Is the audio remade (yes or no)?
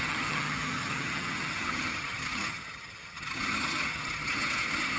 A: yes